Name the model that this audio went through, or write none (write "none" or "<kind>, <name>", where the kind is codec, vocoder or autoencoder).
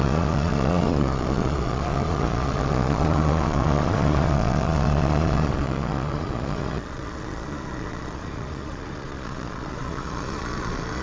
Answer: vocoder, Vocos